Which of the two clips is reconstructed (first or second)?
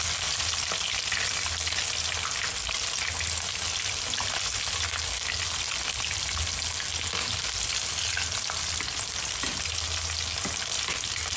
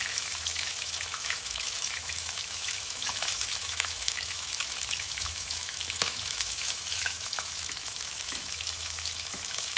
second